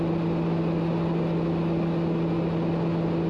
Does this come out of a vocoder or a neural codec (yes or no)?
no